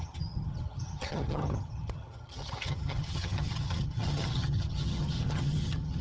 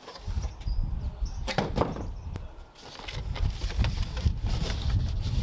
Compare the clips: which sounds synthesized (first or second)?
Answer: first